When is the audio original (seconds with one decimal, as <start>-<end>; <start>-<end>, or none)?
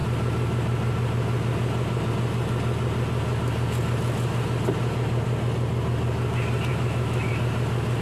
0.0-6.7; 7.3-8.0